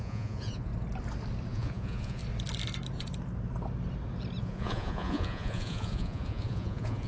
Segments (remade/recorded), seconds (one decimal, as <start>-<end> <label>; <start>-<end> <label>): 0.0-0.7 remade; 0.7-1.5 recorded; 1.5-2.2 remade; 2.2-4.4 recorded; 4.4-7.1 remade